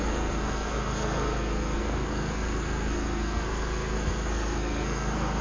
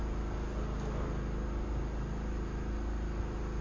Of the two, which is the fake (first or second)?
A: first